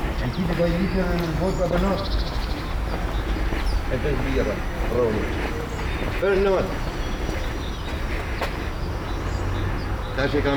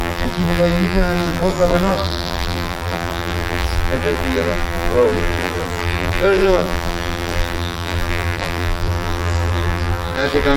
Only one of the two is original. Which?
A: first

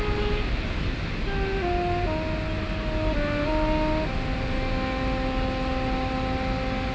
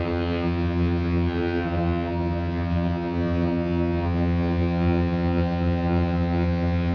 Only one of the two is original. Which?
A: first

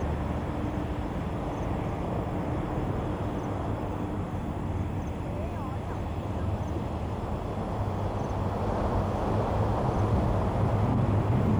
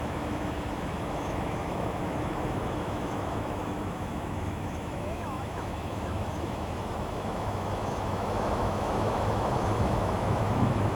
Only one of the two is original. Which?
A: first